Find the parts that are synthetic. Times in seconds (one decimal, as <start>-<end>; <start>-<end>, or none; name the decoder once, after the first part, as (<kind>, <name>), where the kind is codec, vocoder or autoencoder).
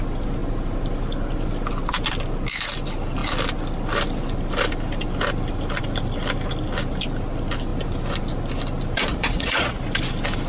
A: 9.1-9.8 (vocoder, Vocos)